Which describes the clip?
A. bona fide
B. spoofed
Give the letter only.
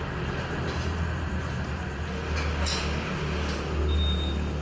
A